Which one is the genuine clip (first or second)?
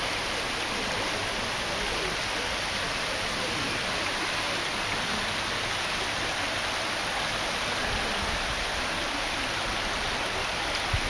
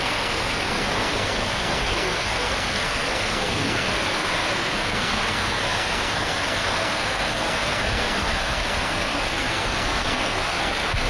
first